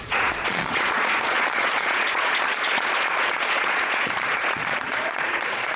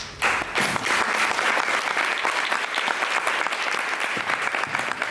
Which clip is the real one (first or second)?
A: second